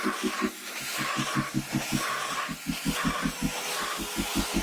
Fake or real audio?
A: real